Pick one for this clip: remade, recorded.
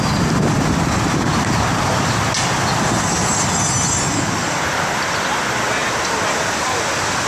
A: recorded